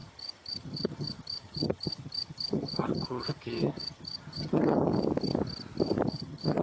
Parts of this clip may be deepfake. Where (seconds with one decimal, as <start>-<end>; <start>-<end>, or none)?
0.0-4.9; 6.1-6.6